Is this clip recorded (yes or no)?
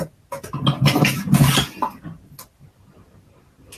yes